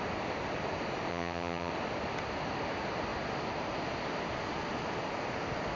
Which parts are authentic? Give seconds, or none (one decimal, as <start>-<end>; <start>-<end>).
0.0-1.1; 1.7-5.8

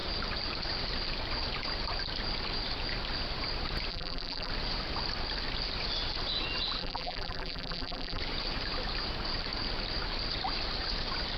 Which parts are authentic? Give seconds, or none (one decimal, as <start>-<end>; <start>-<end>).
0.0-3.9; 4.5-6.8; 8.2-11.4

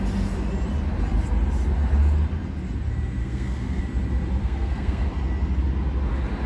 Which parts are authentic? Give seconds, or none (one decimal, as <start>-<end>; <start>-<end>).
0.0-3.2; 3.8-4.4; 5.1-6.5